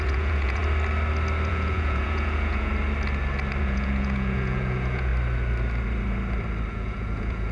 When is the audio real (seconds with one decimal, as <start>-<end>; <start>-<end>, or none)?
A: 0.6-1.5; 2.7-3.6; 5.1-6.7